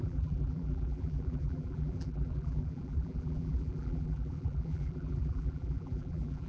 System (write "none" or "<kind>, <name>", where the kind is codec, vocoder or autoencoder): vocoder, BigVGAN v2